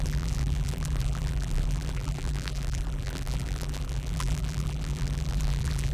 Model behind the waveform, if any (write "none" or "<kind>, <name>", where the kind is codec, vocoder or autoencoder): vocoder, BigVGAN v2